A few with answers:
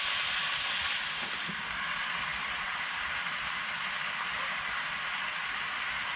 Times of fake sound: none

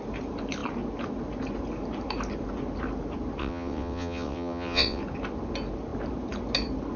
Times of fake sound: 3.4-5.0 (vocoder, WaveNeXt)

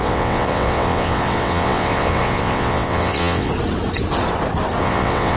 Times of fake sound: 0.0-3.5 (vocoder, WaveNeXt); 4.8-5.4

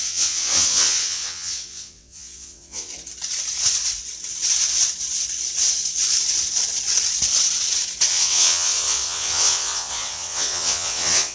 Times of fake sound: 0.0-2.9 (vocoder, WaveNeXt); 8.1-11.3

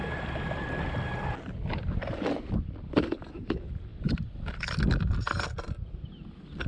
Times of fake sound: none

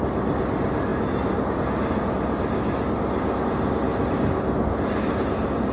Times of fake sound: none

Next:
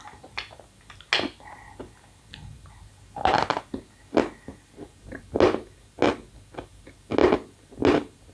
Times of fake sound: none